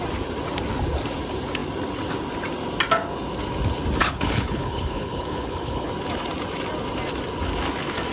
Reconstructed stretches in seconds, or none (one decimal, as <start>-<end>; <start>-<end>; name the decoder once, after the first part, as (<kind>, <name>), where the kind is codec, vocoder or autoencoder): 4.0-5.9 (codec, HILCodec)